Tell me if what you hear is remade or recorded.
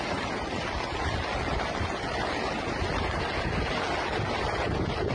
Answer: recorded